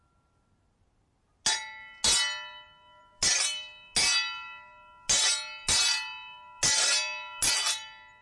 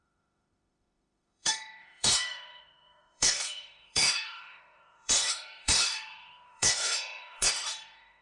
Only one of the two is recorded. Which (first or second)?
first